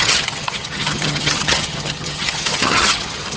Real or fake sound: fake